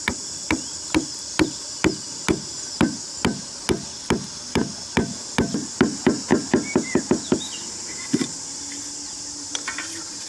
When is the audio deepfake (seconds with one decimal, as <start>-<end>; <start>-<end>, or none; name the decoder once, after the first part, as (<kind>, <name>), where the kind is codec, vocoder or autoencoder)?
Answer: none